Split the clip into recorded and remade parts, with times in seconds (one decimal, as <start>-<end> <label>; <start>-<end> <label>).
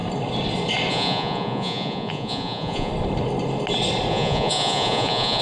0.0-0.9 recorded; 0.9-2.9 remade; 2.9-4.1 recorded; 4.1-5.4 remade